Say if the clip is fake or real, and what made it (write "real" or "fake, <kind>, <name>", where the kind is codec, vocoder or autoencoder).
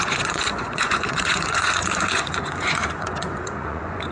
fake, vocoder, Vocos